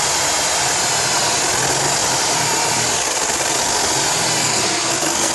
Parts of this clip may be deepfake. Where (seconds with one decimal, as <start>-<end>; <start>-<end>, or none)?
4.4-5.3